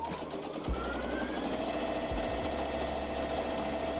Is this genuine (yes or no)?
yes